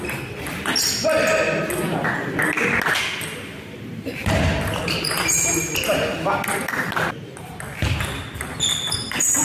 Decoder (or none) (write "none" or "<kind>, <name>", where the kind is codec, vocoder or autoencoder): none